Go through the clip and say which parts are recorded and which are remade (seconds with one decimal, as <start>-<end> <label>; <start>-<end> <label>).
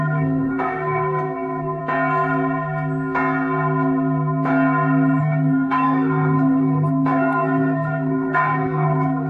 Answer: 0.0-1.8 remade; 1.8-5.2 recorded; 5.2-9.3 remade